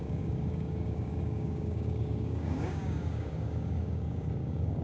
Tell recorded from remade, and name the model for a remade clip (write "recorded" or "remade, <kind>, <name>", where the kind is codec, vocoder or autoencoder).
remade, codec, DAC